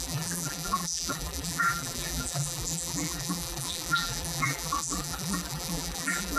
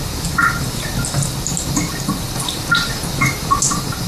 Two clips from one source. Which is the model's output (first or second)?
first